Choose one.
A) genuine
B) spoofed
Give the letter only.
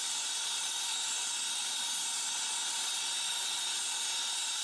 A